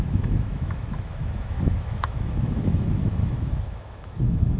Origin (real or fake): fake